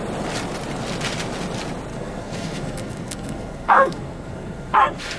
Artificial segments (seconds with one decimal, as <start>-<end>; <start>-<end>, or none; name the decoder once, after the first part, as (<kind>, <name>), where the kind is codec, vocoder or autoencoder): 1.9-5.2 (codec, SNAC)